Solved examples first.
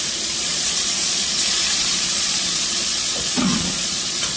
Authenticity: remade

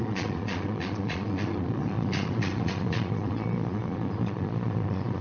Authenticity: remade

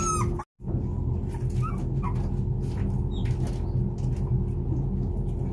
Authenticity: recorded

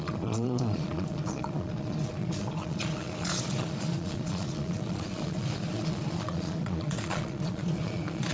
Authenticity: remade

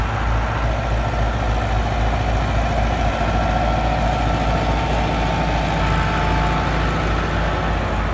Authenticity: recorded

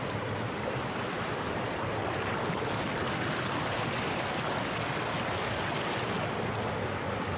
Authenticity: recorded